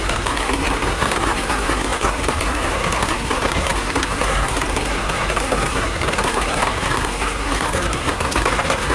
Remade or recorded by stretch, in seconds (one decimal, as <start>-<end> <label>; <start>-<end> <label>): 0.0-8.9 remade